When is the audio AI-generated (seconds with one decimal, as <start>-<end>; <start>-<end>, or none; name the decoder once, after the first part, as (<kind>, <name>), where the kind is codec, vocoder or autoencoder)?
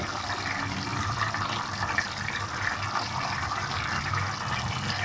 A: none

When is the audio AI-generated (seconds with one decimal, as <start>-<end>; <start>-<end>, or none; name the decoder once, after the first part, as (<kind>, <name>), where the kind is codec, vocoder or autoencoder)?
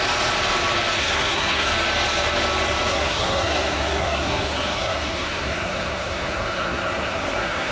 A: 1.0-1.7 (codec, SNAC); 2.9-7.7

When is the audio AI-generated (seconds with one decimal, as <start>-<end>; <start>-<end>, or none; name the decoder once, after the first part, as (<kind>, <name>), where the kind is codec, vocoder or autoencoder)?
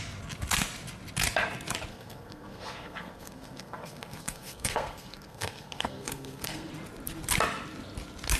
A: 1.9-6.7 (codec, SNAC)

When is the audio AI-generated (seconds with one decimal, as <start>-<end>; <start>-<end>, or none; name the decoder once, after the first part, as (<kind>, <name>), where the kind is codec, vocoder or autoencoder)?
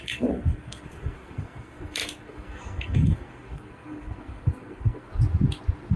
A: 0.0-5.1 (codec, SNAC)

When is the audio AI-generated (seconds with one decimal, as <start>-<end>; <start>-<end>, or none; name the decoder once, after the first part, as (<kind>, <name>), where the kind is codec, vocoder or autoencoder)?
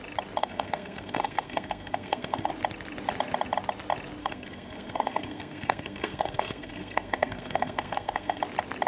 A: 0.4-2.5 (codec, SNAC); 4.2-8.4